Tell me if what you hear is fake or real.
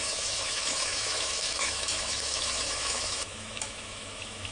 fake